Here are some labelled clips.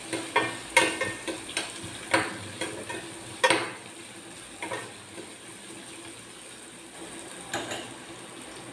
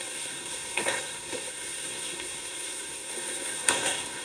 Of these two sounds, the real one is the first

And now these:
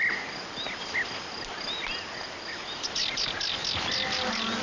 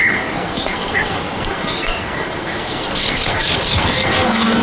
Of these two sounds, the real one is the first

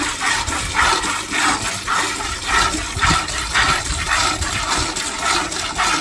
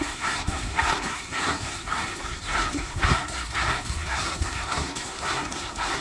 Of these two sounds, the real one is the first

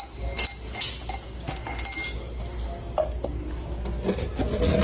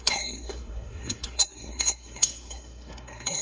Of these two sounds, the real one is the first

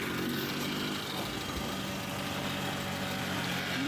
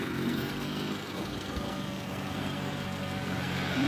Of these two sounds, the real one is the first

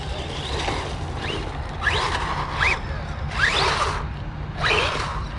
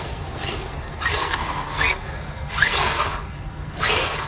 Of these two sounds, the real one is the first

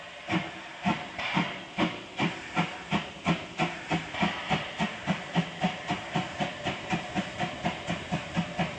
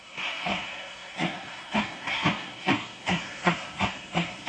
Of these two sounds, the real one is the first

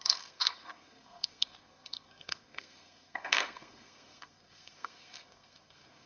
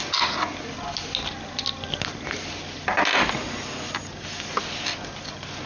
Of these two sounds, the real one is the second